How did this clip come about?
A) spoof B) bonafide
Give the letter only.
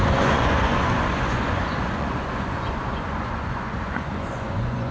A